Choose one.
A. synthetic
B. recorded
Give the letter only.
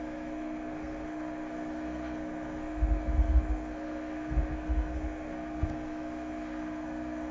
A